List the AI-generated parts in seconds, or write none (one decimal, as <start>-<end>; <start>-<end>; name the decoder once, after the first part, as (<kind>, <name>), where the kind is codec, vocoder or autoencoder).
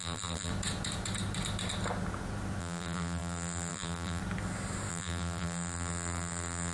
0.0-0.5 (vocoder, BigVGAN v2); 2.6-4.2; 4.9-6.7